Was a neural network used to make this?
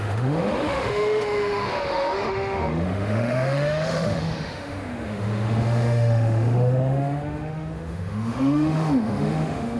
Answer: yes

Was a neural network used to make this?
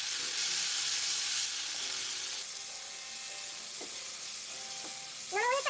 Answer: no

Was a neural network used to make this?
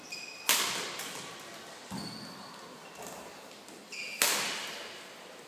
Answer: no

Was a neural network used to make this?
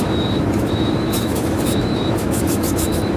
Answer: yes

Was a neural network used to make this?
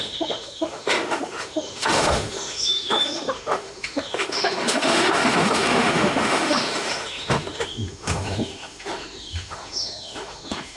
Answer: yes